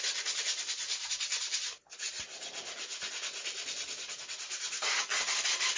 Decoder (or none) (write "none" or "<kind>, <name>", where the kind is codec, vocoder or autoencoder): none